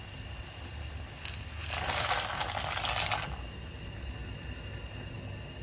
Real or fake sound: real